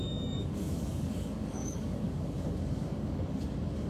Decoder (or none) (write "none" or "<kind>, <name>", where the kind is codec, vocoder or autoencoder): codec, DAC